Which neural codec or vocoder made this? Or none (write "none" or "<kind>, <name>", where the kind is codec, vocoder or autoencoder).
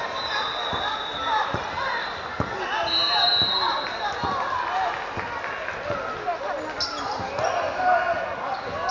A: none